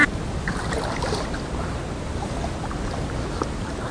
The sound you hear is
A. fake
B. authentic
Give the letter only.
B